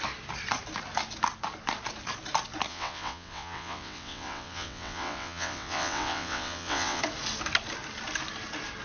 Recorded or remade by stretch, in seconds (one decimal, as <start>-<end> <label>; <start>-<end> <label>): 0.0-2.7 recorded; 2.7-7.0 remade; 7.0-8.8 recorded